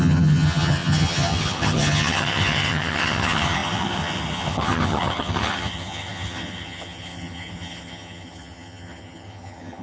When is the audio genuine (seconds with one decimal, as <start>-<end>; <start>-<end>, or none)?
none